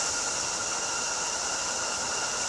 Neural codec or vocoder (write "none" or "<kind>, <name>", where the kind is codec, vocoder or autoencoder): none